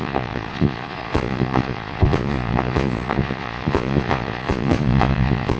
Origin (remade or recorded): remade